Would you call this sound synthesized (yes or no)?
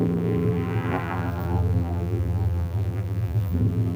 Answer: yes